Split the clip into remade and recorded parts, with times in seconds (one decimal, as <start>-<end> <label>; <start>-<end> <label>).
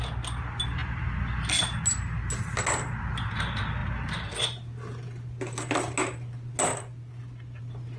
0.0-8.0 recorded